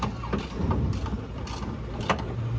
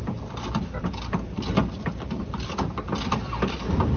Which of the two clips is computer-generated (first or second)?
second